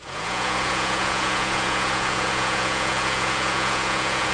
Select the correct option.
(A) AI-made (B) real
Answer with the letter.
A